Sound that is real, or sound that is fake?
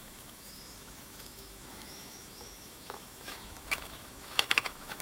fake